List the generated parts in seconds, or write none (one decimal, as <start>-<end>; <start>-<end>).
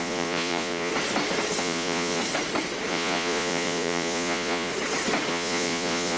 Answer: 0.0-0.9; 1.6-2.2; 2.9-4.7; 5.3-6.2